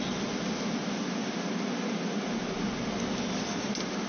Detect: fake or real real